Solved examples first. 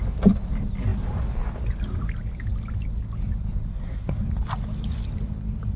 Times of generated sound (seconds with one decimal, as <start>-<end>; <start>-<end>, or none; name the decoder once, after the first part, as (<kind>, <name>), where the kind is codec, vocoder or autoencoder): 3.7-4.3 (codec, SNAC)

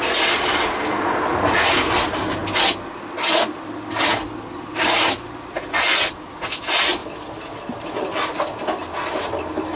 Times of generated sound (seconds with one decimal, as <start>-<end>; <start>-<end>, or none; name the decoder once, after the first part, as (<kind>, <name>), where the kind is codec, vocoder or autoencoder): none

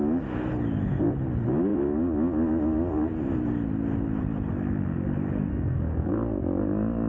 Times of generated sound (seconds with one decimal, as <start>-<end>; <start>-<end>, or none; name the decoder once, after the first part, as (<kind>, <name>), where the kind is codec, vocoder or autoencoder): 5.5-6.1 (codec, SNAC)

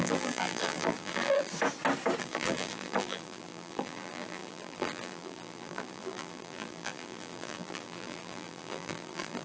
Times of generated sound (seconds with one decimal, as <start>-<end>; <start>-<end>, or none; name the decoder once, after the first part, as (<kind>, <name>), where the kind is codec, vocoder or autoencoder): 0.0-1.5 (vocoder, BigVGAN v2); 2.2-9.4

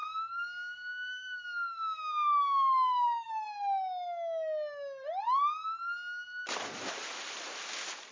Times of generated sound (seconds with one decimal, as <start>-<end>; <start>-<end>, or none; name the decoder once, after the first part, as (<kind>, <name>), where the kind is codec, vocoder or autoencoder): 0.0-3.3 (codec, DAC)

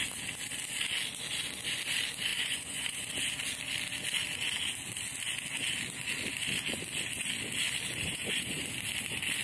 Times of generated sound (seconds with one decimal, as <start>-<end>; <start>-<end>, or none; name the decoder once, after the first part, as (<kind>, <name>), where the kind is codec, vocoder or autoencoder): 2.3-3.1 (vocoder, Vocos); 8.1-8.6